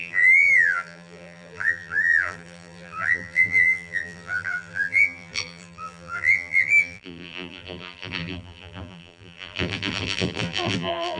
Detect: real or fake fake